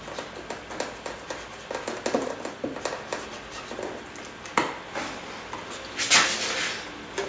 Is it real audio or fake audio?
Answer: real